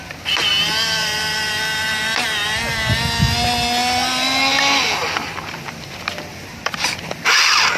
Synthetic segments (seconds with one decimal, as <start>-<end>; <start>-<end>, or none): 0.0-0.5